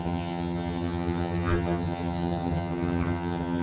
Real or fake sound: fake